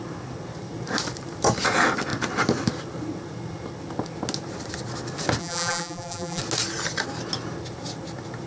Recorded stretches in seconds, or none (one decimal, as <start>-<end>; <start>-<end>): 0.0-5.4; 6.4-8.5